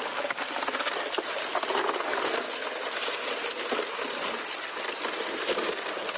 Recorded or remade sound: recorded